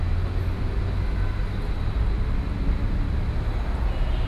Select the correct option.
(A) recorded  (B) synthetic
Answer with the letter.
A